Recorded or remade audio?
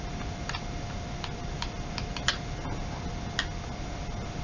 recorded